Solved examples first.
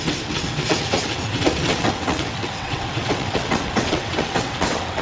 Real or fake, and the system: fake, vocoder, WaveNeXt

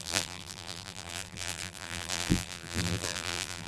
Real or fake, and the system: fake, vocoder, BigVGAN v2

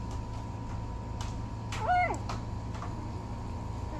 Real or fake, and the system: real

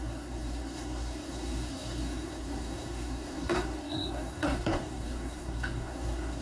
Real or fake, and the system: fake, codec, SNAC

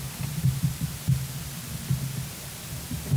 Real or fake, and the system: real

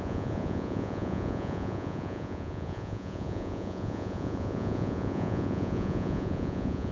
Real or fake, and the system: fake, vocoder, Vocos